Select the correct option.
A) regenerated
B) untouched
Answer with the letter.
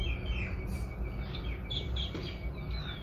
B